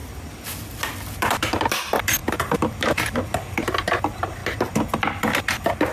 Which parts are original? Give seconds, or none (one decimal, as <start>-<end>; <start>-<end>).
0.0-5.9